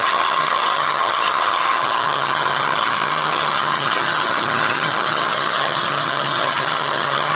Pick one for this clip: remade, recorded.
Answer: remade